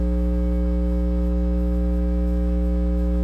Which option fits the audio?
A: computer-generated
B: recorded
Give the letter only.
A